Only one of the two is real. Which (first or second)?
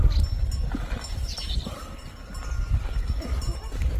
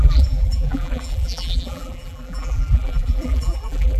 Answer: first